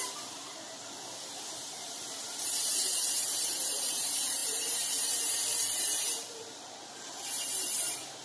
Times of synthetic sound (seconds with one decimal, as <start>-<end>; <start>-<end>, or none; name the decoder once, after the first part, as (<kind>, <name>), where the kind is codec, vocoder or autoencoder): 0.0-8.2 (vocoder, BigVGAN v2)